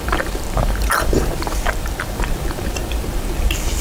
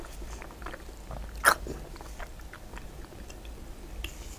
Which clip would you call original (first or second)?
second